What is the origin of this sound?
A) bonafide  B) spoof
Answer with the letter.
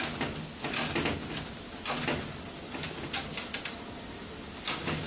A